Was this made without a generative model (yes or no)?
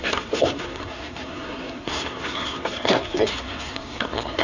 no